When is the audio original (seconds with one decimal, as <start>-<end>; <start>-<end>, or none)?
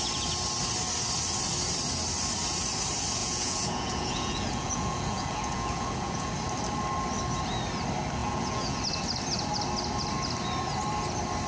0.0-3.2; 6.3-8.2; 8.8-11.5